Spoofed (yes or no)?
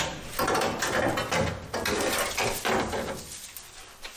no